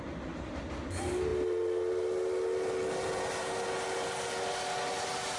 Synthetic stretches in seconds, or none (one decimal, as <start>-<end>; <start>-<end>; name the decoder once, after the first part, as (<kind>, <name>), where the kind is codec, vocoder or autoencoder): none